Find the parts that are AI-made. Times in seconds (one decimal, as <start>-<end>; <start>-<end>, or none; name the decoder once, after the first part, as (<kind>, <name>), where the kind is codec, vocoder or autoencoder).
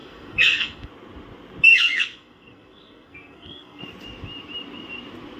0.0-0.9 (codec, SNAC); 1.7-3.8